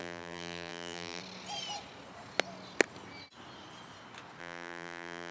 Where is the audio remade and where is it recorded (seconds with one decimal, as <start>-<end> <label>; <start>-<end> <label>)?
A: 0.0-1.2 remade; 1.2-4.4 recorded; 4.4-5.3 remade